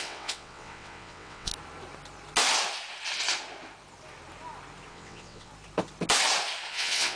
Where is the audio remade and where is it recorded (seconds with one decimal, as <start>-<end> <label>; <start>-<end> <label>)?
0.0-1.5 remade; 1.5-4.9 recorded; 4.9-5.5 remade; 5.5-6.7 recorded; 6.7-7.2 remade